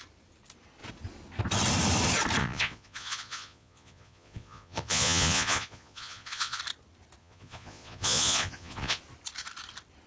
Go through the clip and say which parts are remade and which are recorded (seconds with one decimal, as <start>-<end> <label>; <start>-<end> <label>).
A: 0.0-2.4 recorded; 2.4-6.6 remade; 6.6-7.2 recorded; 7.2-9.0 remade; 9.0-10.1 recorded